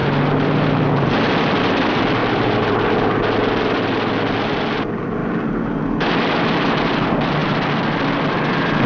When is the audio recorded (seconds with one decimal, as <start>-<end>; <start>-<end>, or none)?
1.1-2.2; 2.8-8.9